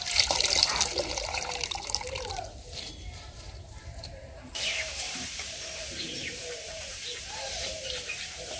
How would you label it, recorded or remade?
remade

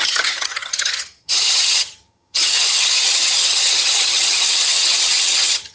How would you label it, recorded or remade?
remade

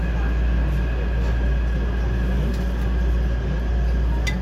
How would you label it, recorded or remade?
recorded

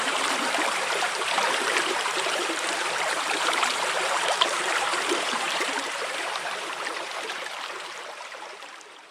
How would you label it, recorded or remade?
remade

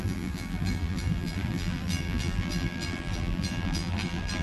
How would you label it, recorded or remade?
remade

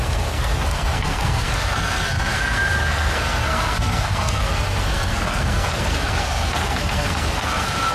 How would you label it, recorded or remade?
remade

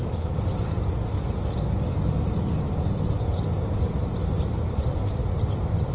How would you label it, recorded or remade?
recorded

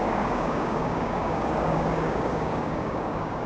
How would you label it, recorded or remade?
remade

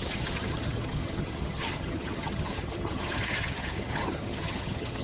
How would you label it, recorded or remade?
remade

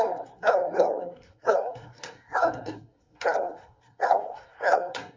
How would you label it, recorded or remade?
remade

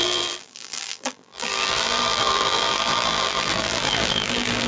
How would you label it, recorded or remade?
remade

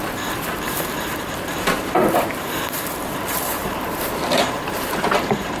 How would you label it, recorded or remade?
remade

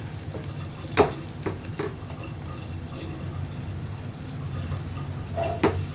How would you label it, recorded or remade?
recorded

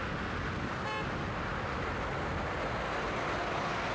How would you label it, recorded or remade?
recorded